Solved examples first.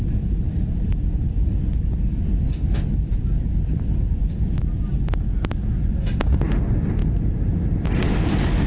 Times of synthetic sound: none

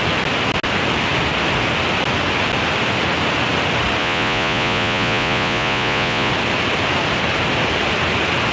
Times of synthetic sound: 4.0-6.3 (vocoder, Vocos)

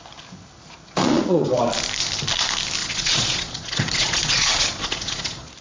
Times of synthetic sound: 1.0-1.6 (vocoder, Vocos); 2.8-5.6

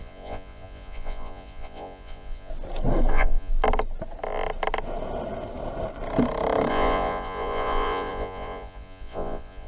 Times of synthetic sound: 0.0-2.5 (vocoder, Vocos); 3.1-3.5; 6.7-9.7

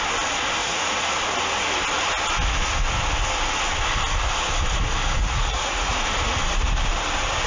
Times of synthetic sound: 0.6-1.1 (vocoder, Vocos); 5.2-5.9

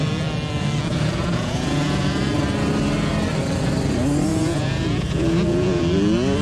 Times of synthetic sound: 0.9-2.4 (vocoder, Vocos); 4.3-5.8

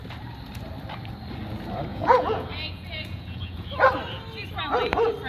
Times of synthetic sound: 1.9-3.7 (vocoder, Vocos)